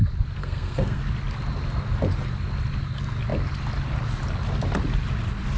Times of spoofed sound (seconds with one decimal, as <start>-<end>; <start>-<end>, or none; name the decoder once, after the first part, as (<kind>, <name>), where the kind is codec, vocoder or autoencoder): 0.4-1.0 (codec, SNAC)